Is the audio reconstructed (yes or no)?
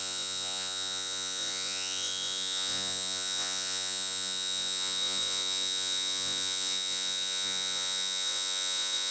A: yes